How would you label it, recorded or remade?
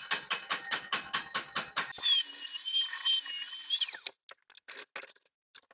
recorded